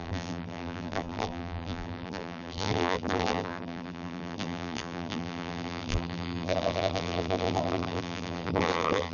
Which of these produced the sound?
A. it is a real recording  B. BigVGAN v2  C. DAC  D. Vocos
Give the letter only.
B